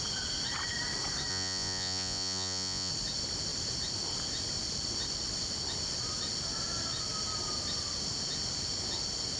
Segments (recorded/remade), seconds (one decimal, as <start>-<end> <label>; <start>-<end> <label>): 0.0-1.3 recorded; 1.3-2.9 remade; 2.9-9.4 recorded